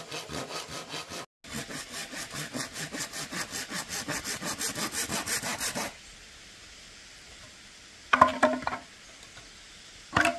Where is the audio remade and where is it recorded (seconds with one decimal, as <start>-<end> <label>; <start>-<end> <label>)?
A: 0.0-10.4 recorded